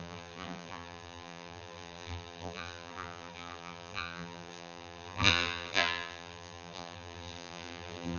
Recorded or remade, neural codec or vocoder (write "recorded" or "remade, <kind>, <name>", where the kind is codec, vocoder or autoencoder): remade, vocoder, BigVGAN v2